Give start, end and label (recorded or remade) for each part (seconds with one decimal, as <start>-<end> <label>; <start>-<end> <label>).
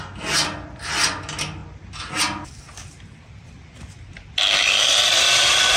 0.0-5.8 recorded